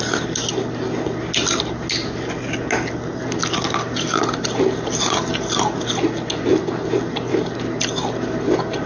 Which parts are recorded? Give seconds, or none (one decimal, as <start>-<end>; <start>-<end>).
0.0-8.9